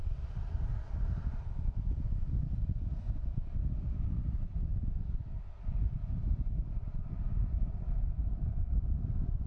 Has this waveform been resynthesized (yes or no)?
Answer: no